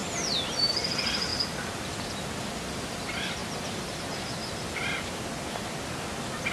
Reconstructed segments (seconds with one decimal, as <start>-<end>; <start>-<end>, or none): none